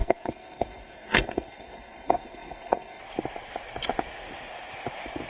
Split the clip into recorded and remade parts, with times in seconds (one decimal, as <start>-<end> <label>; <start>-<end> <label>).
0.0-3.0 remade; 3.0-5.3 recorded